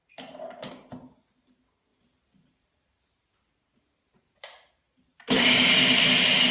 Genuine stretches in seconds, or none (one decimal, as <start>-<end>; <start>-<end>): 0.7-1.9; 5.8-6.5